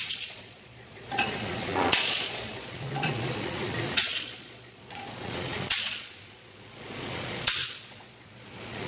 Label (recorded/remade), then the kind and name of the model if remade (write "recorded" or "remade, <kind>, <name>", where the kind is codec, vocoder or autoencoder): remade, vocoder, Vocos